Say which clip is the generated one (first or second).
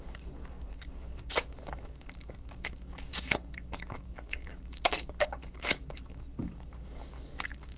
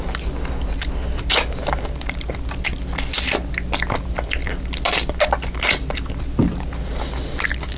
first